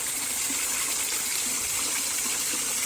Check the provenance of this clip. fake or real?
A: real